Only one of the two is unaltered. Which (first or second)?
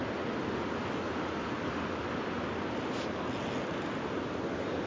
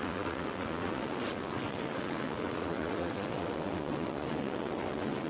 first